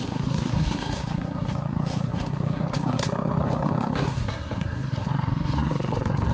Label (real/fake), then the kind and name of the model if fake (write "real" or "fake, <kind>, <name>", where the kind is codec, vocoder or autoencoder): fake, codec, SNAC